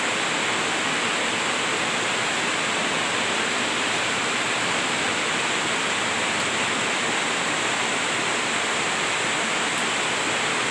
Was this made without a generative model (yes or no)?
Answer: yes